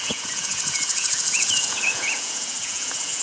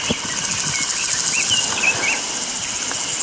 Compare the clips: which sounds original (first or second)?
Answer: second